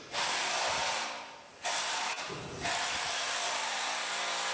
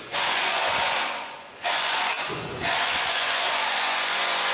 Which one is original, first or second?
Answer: first